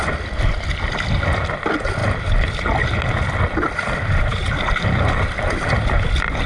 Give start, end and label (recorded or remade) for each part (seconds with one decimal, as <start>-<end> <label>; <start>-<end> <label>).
0.0-6.5 recorded